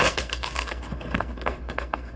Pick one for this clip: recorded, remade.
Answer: remade